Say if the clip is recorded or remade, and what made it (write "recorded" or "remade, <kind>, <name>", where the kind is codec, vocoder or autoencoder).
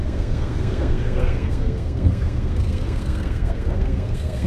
remade, codec, SNAC